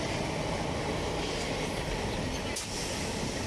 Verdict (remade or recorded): recorded